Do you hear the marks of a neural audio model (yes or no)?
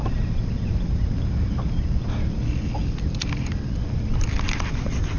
no